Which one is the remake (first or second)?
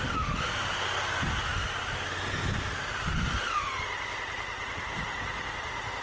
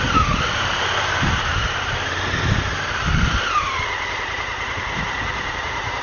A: second